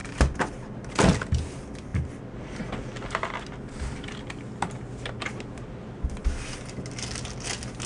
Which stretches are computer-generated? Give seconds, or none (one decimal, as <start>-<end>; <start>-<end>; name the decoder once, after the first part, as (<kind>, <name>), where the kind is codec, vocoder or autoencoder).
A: none